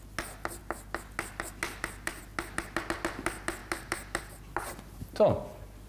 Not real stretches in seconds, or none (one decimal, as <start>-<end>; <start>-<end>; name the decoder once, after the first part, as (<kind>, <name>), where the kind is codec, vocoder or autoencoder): none